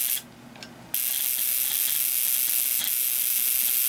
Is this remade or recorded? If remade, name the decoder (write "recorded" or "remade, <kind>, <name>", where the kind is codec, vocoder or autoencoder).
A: recorded